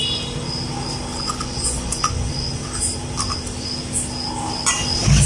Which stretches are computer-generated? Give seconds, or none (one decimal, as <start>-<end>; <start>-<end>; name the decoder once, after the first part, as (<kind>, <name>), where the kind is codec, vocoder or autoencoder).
1.1-2.6 (vocoder, Vocos)